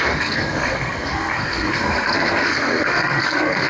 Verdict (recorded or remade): remade